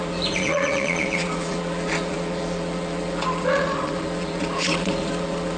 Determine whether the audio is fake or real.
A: fake